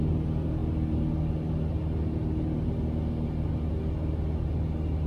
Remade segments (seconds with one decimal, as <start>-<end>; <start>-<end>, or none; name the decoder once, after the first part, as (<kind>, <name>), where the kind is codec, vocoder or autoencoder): none